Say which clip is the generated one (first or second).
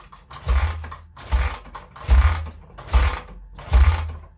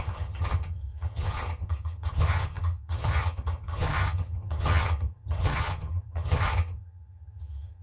second